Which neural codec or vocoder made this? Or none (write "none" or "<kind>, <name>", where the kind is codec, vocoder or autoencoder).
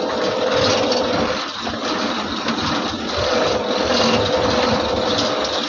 none